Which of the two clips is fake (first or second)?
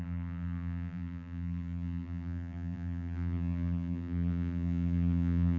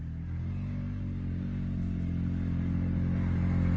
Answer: first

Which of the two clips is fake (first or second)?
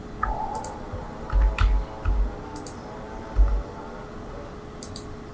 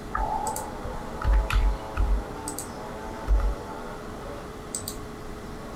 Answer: second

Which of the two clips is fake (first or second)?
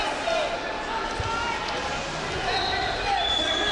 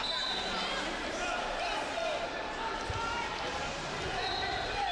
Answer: second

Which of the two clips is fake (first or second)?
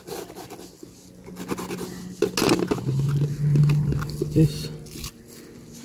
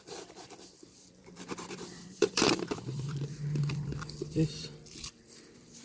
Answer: second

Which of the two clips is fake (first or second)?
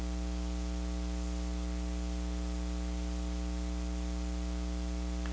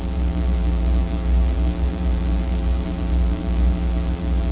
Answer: second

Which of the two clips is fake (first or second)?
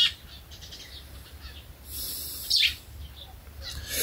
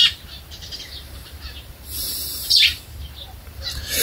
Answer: second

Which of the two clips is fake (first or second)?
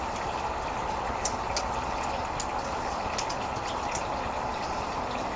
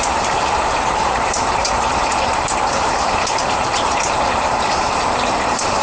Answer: second